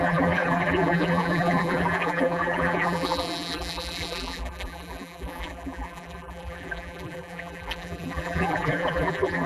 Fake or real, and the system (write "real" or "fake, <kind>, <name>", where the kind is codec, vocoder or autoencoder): fake, vocoder, BigVGAN v2